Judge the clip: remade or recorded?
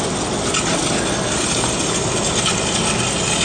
recorded